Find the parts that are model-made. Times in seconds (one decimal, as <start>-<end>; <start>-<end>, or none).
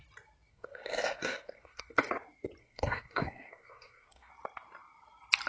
0.5-2.1; 2.6-4.3